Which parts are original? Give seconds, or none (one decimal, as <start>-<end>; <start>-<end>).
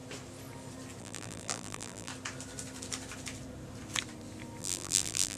0.0-1.0; 2.1-4.6